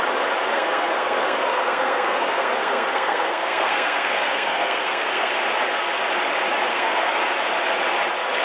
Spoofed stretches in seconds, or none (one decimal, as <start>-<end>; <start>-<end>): 0.5-5.3; 6.7-7.2